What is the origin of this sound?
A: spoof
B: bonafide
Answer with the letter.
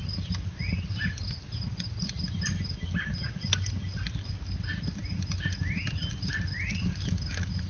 B